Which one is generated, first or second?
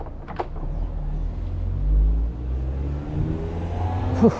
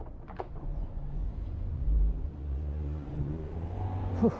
second